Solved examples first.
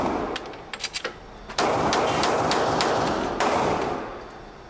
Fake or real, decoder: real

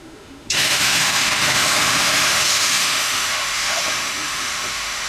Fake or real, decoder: fake, autoencoder, DAC-VAE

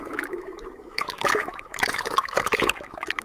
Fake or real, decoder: fake, autoencoder, DAC-VAE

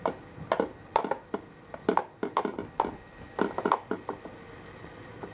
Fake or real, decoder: real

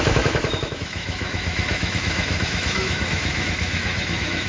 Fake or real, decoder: fake, autoencoder, DAC-VAE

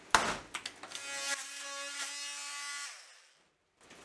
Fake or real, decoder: real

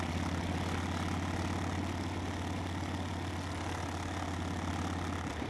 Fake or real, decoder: real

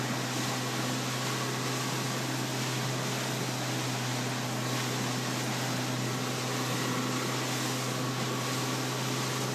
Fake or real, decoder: real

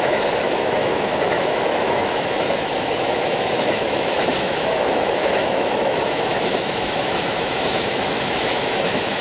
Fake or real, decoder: fake, autoencoder, DAC-VAE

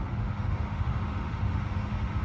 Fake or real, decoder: fake, autoencoder, DAC-VAE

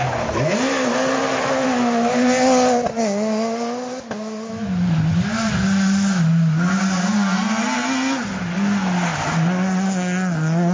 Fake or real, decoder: real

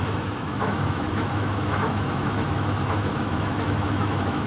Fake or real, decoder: fake, autoencoder, DAC-VAE